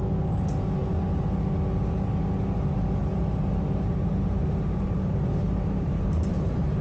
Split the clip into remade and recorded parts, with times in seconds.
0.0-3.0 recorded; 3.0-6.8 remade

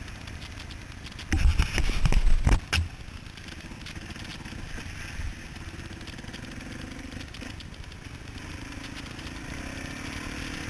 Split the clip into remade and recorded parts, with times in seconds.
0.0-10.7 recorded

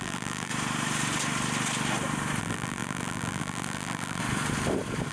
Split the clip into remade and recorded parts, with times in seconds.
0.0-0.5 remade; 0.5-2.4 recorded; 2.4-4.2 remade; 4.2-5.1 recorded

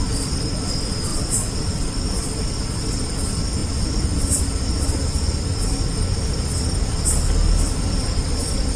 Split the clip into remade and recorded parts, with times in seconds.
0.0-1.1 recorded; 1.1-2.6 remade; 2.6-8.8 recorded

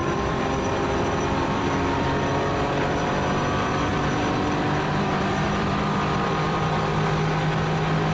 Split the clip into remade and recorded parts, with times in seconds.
0.0-2.3 remade; 2.3-3.9 recorded; 3.9-6.7 remade; 6.7-8.1 recorded

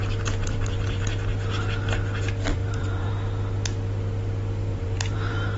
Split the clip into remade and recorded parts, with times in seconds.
0.0-0.4 recorded; 0.4-1.0 remade; 1.0-2.5 recorded; 2.5-3.1 remade; 3.1-4.7 recorded; 4.7-5.6 remade

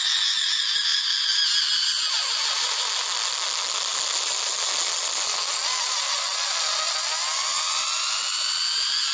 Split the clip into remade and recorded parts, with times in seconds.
0.0-9.1 recorded